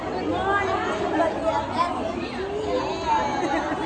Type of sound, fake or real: real